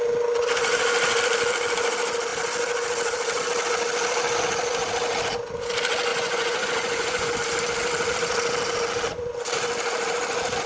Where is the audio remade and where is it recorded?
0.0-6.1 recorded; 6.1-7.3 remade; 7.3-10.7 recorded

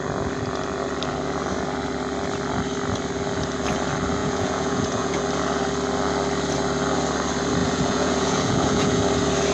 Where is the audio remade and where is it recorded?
0.0-4.2 recorded; 4.2-5.2 remade; 5.2-7.6 recorded; 7.6-9.0 remade; 9.0-9.5 recorded

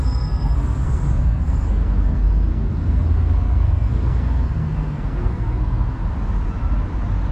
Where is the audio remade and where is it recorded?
0.0-6.0 remade; 6.0-7.3 recorded